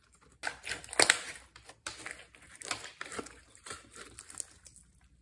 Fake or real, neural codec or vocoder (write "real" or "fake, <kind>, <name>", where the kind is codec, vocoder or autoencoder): real